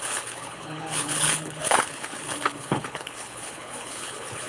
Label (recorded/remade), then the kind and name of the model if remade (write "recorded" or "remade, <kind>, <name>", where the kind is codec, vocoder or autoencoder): remade, codec, HILCodec